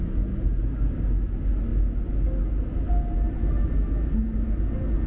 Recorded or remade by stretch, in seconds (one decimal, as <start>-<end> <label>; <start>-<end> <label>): 0.0-5.1 recorded